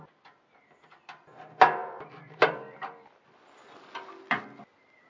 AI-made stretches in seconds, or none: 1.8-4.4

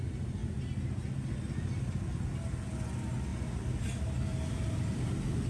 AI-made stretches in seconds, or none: none